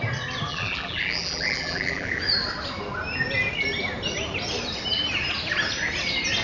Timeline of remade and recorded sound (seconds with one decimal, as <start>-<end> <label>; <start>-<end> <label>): 0.0-0.5 recorded; 0.5-2.2 remade; 2.2-6.4 recorded